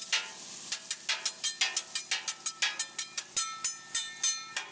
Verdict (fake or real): real